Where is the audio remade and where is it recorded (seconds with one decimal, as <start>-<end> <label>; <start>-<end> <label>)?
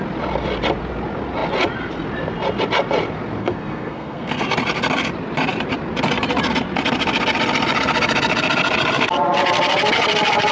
0.0-3.4 recorded; 3.4-4.4 remade; 4.4-10.5 recorded